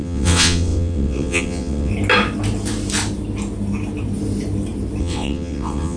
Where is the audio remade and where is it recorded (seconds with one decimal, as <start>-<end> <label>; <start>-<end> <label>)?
0.0-1.9 remade; 1.9-5.0 recorded; 5.0-6.0 remade